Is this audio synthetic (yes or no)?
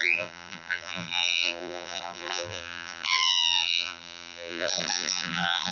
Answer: yes